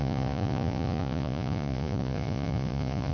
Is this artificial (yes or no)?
yes